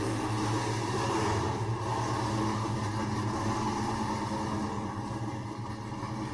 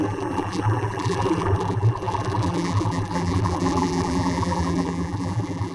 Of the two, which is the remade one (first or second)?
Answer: second